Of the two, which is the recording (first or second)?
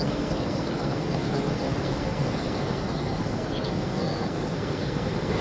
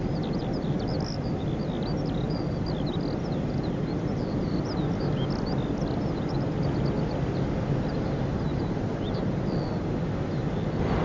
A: second